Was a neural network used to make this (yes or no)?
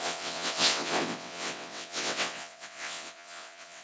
yes